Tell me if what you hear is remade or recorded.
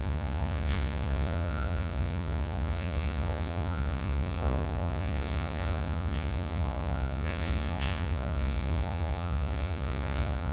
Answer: remade